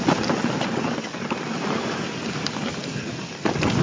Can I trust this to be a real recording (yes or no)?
yes